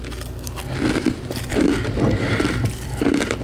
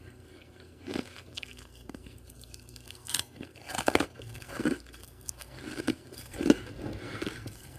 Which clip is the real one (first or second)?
first